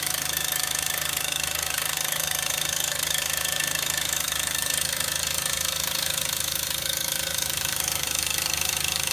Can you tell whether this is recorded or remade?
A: remade